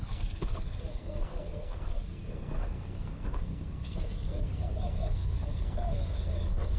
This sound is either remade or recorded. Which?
remade